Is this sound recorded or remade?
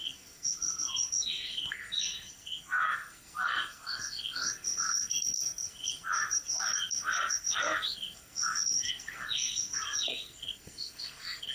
remade